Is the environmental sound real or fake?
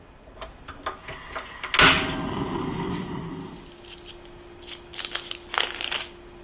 real